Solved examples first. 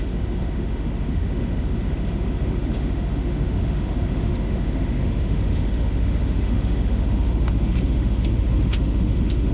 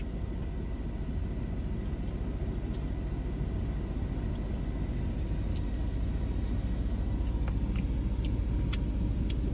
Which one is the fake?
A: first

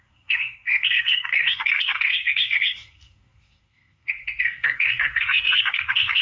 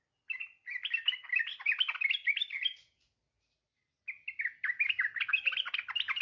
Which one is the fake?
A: first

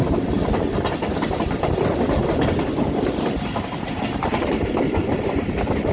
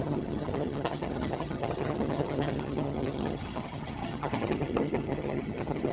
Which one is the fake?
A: second